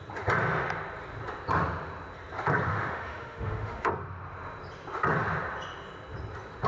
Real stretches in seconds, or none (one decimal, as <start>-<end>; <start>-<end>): 0.0-2.7; 3.9-6.7